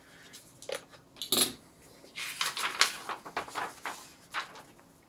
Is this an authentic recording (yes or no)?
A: yes